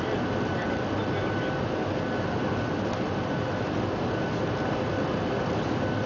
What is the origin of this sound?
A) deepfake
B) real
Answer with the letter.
B